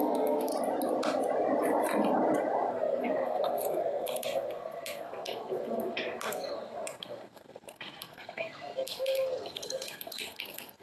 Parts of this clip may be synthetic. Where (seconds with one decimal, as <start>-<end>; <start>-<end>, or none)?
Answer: 0.0-0.5; 2.7-10.8